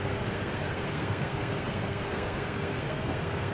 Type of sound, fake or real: fake